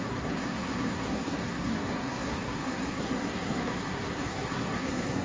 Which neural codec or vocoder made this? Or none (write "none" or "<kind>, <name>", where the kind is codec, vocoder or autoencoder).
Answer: codec, SNAC